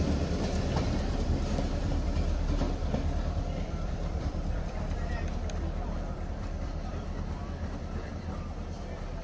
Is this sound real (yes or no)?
no